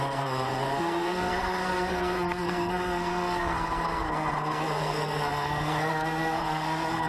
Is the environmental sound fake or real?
fake